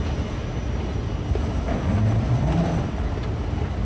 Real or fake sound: real